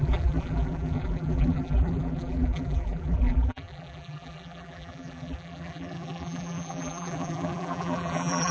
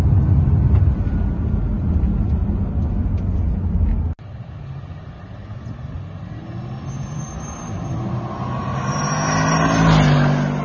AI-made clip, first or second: first